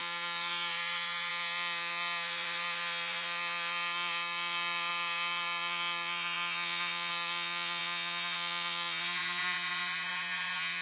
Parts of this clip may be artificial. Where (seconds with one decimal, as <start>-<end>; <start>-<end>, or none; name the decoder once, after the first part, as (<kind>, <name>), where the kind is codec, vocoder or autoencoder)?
0.0-10.8 (vocoder, Vocos)